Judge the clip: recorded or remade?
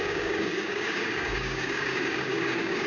remade